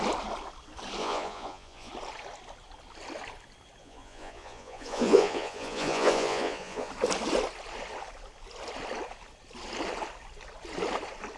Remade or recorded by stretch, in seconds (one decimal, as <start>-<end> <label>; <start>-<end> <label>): 0.0-1.0 recorded; 1.0-1.9 remade; 1.9-3.8 recorded; 3.8-6.9 remade; 6.9-11.4 recorded